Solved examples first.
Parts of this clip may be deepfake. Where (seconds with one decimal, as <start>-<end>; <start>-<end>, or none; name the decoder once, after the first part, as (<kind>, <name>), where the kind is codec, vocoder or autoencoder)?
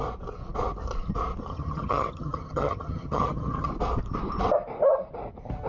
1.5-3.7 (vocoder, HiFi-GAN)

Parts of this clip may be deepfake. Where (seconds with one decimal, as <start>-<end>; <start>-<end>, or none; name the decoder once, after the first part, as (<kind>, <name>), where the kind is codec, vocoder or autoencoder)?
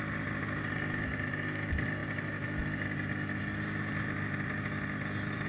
none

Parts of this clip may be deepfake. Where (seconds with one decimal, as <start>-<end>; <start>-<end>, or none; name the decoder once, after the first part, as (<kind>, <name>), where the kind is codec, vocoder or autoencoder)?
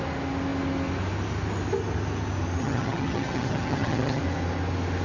2.6-4.2 (vocoder, HiFi-GAN)